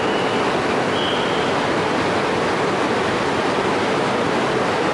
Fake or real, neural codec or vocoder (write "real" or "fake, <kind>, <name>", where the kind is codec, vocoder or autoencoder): real